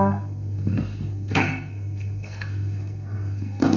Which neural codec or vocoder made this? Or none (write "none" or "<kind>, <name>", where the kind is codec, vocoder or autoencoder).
codec, SNAC